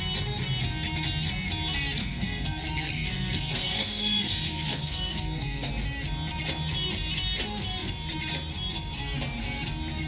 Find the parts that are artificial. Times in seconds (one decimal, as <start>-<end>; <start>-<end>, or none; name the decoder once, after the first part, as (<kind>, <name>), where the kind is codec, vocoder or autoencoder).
2.0-5.7 (codec, SNAC)